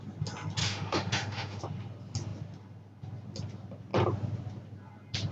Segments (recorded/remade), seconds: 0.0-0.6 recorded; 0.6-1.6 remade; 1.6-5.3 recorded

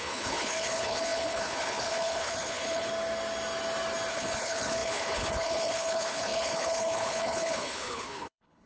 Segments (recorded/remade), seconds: 0.0-2.9 remade; 2.9-4.1 recorded; 4.1-8.7 remade